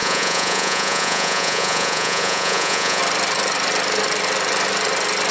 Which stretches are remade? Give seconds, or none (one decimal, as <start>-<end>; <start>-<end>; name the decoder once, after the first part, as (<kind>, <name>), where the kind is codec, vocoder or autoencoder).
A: 0.0-3.0 (vocoder, Vocos)